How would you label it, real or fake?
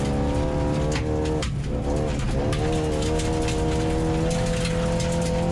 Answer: real